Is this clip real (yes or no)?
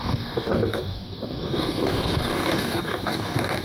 no